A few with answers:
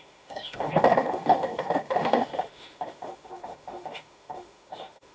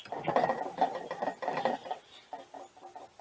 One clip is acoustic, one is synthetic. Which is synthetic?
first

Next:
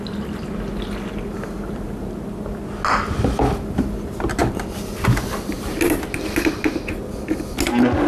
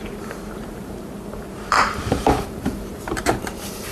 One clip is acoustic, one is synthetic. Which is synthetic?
second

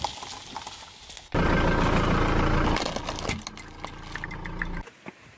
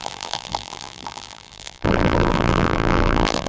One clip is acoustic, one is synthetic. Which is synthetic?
second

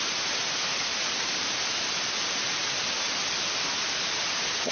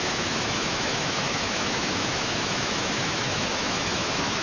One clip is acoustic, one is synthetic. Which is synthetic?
second